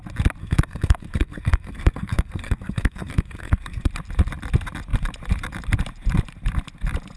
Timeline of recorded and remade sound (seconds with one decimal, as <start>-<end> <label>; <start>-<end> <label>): 0.0-0.4 recorded; 0.4-3.9 remade; 3.9-7.2 recorded